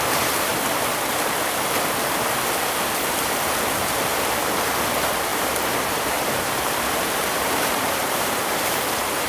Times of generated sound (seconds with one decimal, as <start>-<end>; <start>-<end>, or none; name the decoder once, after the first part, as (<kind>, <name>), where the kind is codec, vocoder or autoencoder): 0.0-0.5 (vocoder, BigVGAN v2); 3.0-9.3